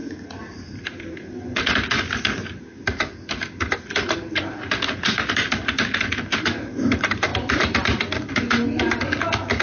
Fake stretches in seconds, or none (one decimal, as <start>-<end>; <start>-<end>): 0.0-1.3